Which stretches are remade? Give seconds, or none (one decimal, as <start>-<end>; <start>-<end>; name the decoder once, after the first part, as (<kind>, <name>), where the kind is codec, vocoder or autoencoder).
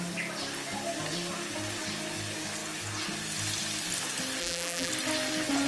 4.4-4.9 (vocoder, BigVGAN v2)